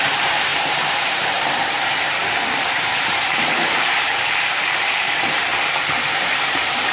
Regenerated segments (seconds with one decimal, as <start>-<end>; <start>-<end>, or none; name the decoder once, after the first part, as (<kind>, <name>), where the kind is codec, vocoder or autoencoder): 0.0-5.5 (vocoder, BigVGAN v2); 6.2-6.9